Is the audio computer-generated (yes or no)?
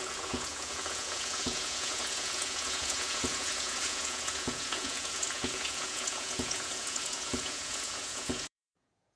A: yes